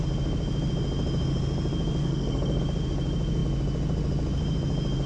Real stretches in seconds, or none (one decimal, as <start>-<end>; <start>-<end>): 0.0-2.0; 2.6-5.1